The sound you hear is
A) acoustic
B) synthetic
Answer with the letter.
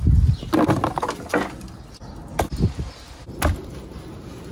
A